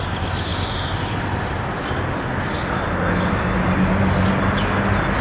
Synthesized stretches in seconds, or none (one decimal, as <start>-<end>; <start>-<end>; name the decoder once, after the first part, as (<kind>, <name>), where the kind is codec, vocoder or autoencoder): none